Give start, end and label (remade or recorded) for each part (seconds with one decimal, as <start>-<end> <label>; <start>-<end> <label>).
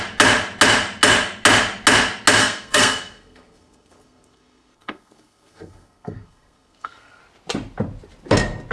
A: 0.0-2.4 recorded; 2.4-7.2 remade; 7.2-8.7 recorded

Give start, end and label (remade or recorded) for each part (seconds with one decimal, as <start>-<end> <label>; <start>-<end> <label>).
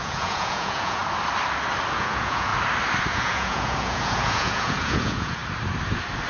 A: 0.0-1.0 remade; 1.0-1.9 recorded; 1.9-2.5 remade; 2.5-3.1 recorded; 3.1-5.4 remade; 5.4-6.3 recorded